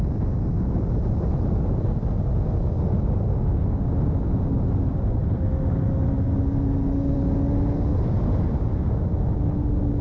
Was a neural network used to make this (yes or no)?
no